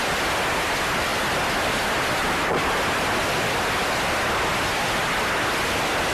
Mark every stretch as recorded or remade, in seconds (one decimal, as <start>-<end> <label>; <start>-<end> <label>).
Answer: 0.0-6.1 recorded